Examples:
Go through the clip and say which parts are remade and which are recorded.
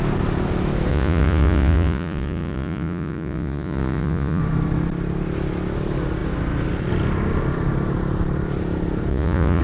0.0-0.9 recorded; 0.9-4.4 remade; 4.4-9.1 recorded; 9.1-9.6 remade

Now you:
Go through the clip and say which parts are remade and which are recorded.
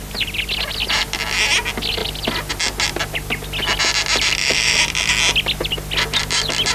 0.0-4.4 recorded; 4.4-5.1 remade; 5.1-6.7 recorded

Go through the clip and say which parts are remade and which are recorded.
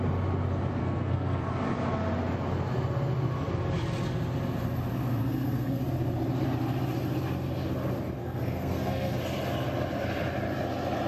0.0-0.8 recorded; 0.8-1.4 remade; 1.4-5.2 recorded; 5.2-5.8 remade; 5.8-8.2 recorded; 8.2-9.2 remade; 9.2-11.1 recorded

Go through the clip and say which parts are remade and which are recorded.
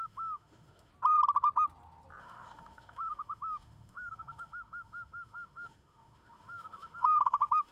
0.0-0.9 remade; 0.9-2.2 recorded; 2.2-7.7 remade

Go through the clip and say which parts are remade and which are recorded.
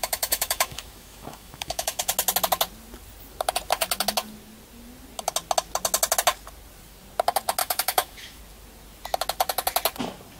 0.0-2.0 remade; 2.0-7.6 recorded; 7.6-8.4 remade; 8.4-10.4 recorded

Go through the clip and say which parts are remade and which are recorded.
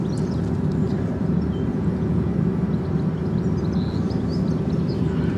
0.0-1.7 recorded; 1.7-2.3 remade; 2.3-5.4 recorded